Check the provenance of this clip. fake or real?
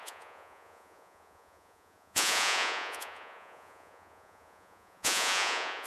fake